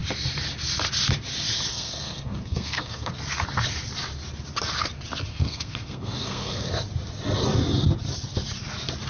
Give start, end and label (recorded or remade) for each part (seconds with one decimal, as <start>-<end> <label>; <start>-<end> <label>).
0.0-1.7 recorded; 1.7-3.1 remade; 3.1-5.3 recorded; 5.3-6.7 remade; 6.7-9.1 recorded